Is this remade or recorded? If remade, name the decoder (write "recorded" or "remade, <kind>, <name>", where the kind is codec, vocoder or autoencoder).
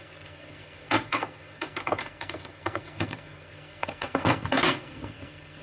remade, codec, SNAC